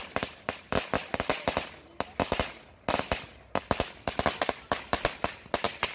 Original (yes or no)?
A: yes